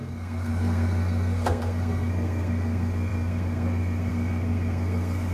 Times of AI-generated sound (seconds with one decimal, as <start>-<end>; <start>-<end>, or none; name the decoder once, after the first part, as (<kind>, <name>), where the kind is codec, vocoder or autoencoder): 0.0-5.3 (codec, SNAC)